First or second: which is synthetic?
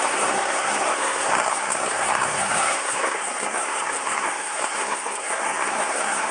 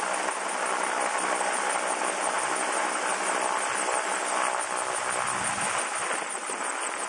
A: first